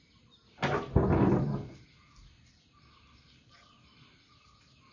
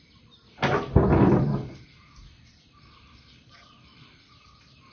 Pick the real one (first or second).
first